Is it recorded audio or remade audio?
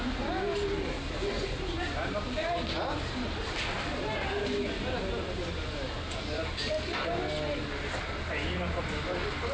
recorded